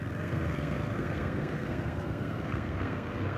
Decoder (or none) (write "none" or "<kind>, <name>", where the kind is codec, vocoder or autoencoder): codec, SNAC